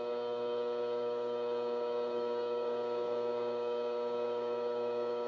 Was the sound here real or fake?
fake